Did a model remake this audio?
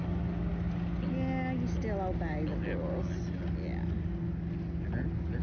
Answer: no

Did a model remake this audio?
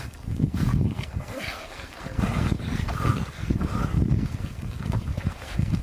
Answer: yes